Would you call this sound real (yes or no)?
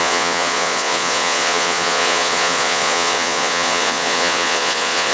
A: no